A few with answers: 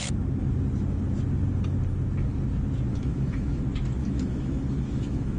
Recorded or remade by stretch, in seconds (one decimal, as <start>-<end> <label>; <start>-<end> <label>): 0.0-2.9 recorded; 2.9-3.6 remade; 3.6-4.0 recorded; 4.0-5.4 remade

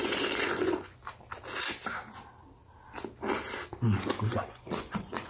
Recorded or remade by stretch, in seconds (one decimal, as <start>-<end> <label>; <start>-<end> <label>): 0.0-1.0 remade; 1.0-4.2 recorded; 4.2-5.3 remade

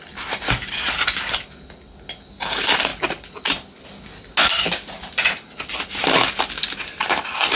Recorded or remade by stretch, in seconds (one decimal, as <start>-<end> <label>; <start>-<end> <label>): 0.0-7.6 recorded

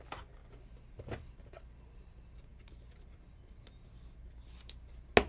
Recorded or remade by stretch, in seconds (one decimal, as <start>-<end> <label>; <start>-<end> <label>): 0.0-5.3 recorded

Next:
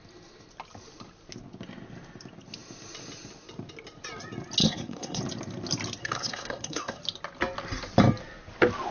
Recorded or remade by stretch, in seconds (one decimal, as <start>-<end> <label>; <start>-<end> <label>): 0.0-4.6 recorded; 4.6-5.2 remade; 5.2-6.0 recorded; 6.0-7.0 remade; 7.0-8.9 recorded

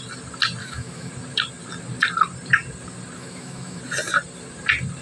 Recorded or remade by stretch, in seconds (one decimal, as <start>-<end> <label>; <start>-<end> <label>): 0.0-0.6 recorded; 0.6-1.1 remade; 1.1-3.2 recorded; 3.2-3.8 remade; 3.8-5.0 recorded